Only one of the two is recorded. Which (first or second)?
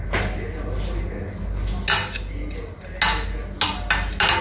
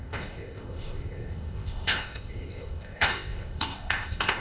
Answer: first